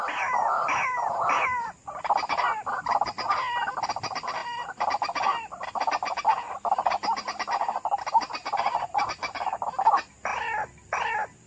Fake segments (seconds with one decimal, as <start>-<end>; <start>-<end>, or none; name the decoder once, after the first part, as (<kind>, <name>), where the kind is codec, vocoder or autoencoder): none